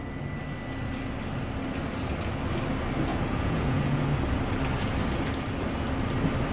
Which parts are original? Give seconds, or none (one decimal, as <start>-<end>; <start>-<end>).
0.0-3.1; 4.0-6.5